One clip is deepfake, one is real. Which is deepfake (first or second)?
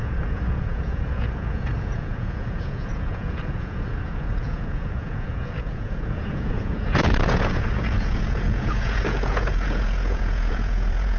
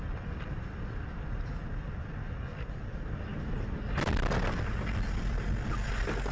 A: first